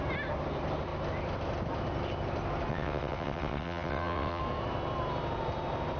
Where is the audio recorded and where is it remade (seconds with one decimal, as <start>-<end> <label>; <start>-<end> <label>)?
0.0-2.7 recorded; 2.7-4.4 remade; 4.4-6.0 recorded